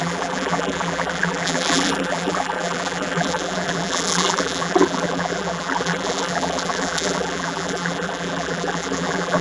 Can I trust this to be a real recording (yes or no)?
no